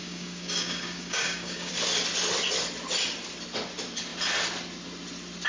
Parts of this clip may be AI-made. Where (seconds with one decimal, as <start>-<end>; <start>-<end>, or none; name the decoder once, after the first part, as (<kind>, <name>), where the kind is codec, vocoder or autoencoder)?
0.0-1.7 (codec, DAC)

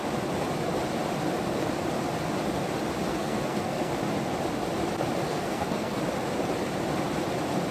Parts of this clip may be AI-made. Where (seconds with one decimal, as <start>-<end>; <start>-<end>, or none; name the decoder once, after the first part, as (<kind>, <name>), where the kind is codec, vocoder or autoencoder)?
3.1-3.9 (codec, SNAC); 5.3-6.0

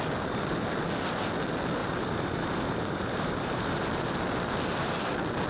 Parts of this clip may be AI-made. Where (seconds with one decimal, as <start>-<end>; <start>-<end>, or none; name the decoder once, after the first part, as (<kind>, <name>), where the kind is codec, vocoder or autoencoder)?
1.8-3.9 (vocoder, BigVGAN v2)

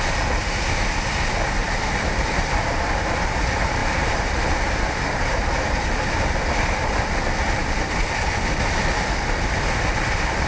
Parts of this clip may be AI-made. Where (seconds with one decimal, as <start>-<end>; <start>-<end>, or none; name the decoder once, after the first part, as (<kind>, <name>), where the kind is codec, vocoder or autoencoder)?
1.6-2.8 (vocoder, BigVGAN v2); 3.8-5.2

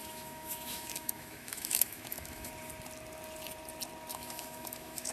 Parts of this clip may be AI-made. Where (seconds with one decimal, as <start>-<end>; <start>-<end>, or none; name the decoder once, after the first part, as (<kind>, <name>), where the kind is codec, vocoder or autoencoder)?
0.0-2.5 (autoencoder, DAC-VAE); 4.1-5.1

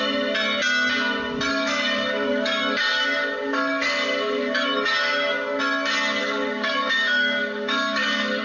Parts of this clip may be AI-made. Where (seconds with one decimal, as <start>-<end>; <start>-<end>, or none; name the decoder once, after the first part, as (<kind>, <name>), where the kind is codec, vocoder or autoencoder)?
1.5-5.6 (codec, DAC); 6.2-8.4

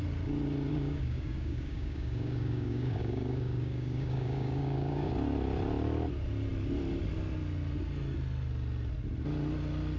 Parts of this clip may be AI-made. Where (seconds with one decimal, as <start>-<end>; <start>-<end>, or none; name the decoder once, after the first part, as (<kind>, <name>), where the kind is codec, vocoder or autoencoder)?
0.7-5.1 (codec, DAC)

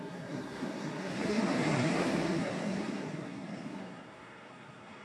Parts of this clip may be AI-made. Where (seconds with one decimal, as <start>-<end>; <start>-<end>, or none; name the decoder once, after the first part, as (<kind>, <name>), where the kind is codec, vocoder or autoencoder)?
0.0-5.0 (codec, SNAC)